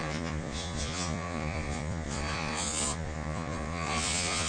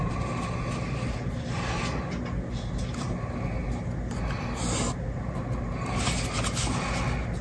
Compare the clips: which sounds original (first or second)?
second